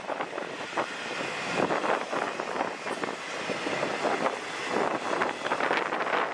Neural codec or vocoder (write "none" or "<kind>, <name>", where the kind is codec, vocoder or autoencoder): none